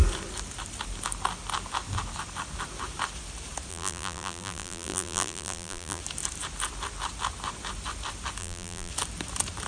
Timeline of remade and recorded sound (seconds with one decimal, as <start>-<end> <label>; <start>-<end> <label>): 0.0-3.7 recorded; 3.7-6.0 remade; 6.0-8.4 recorded; 8.4-8.9 remade; 8.9-9.7 recorded